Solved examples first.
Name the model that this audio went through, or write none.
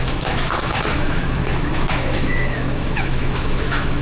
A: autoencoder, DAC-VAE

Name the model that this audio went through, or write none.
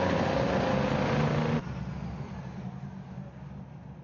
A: none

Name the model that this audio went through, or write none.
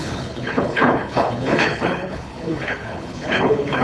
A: codec, HILCodec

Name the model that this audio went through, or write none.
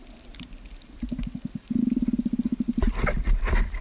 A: vocoder, BigVGAN v2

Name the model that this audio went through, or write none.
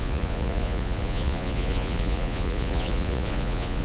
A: vocoder, Vocos